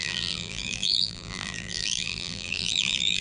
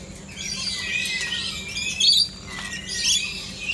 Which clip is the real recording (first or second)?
second